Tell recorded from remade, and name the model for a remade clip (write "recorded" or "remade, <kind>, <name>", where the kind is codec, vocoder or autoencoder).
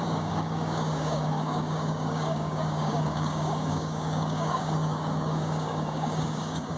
remade, codec, DAC